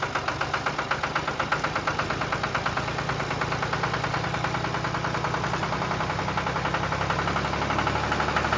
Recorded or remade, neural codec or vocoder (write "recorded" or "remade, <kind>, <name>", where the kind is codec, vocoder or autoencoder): recorded